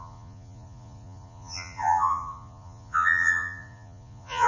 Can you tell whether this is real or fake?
fake